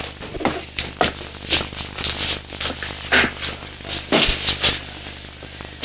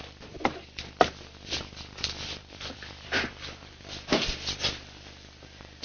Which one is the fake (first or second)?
second